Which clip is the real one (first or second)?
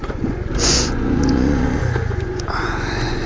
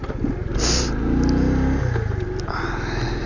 second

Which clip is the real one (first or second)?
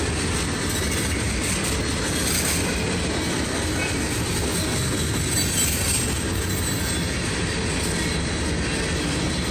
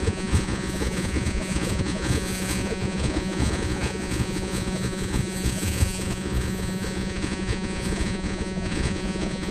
first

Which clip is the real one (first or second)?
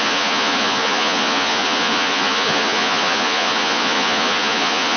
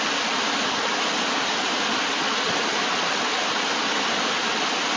second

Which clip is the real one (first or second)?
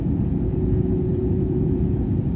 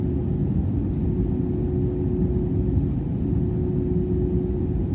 second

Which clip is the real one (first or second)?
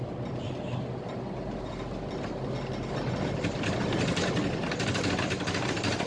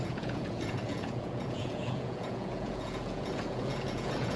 first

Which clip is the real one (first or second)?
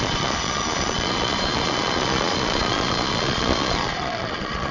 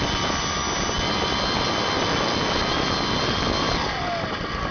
second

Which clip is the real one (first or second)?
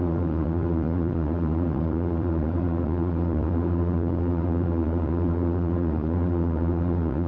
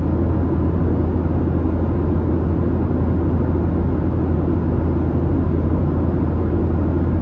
second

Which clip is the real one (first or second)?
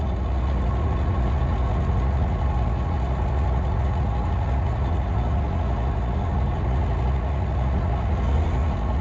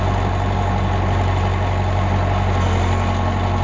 second